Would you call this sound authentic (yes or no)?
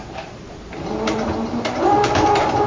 no